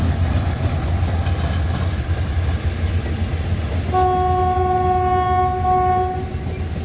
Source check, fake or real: real